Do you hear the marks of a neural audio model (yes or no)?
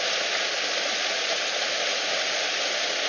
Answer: no